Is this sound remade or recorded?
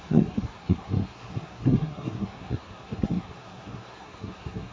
remade